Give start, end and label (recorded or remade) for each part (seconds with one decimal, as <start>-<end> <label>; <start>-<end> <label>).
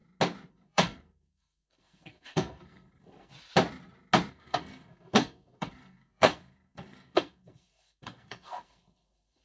0.0-0.5 recorded; 0.5-3.3 remade; 3.3-4.3 recorded; 4.3-9.4 remade